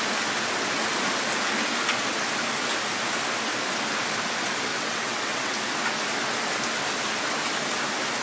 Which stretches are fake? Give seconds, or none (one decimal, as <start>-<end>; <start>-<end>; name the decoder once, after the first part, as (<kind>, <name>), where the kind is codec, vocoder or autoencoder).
4.7-5.6 (vocoder, WaveNeXt)